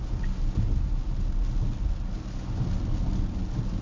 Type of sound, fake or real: real